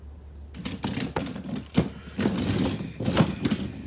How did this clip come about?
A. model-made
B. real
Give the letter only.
B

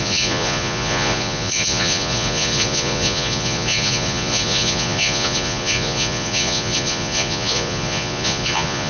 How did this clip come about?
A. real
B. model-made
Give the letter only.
B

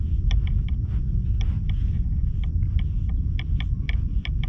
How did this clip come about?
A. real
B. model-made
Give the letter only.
A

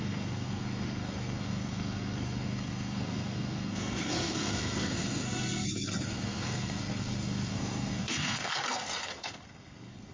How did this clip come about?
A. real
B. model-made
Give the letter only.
B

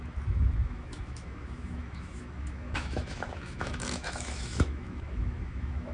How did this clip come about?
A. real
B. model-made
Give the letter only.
B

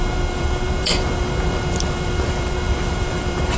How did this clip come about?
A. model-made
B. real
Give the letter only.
A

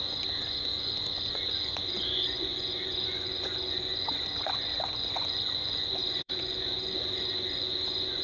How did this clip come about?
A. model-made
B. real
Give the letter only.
A